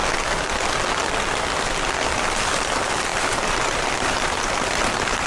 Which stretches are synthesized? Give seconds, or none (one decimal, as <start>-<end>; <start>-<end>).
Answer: 3.1-5.3

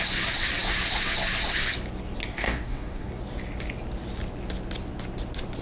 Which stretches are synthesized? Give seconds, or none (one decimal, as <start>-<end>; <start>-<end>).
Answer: 2.3-3.1

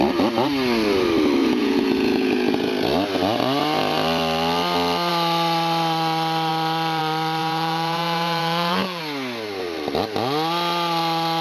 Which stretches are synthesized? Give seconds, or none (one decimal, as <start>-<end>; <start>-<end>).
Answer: 1.4-2.7; 7.4-9.0

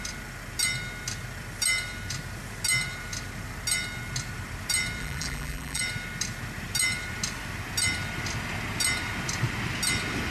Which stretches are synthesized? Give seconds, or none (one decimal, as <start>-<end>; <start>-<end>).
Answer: 5.0-5.8

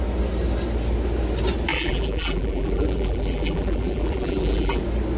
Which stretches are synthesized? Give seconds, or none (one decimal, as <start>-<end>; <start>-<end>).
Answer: 1.7-4.8

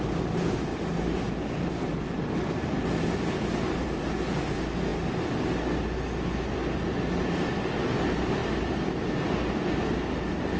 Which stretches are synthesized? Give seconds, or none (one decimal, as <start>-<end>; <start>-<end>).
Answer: 0.7-4.0